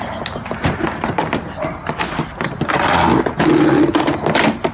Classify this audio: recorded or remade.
recorded